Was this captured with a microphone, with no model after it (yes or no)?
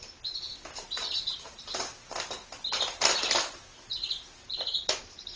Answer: yes